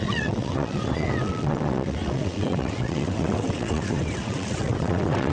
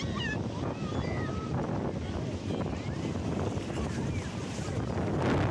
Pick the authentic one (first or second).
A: second